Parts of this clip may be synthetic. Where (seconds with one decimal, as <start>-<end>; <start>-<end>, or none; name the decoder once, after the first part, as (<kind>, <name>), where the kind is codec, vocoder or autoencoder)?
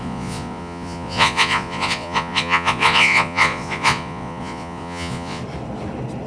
0.0-5.4 (vocoder, Vocos)